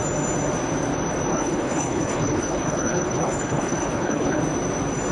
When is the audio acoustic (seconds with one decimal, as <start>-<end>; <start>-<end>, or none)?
0.0-1.3; 4.4-5.1

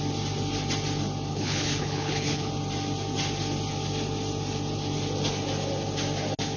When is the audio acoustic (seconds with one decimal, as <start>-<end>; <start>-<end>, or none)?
0.0-1.3; 2.5-6.6